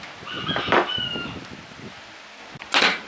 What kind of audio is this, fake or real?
real